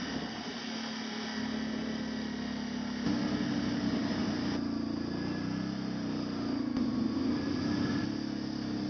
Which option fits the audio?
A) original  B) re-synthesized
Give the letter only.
A